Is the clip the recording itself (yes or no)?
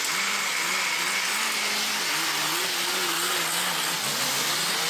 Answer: yes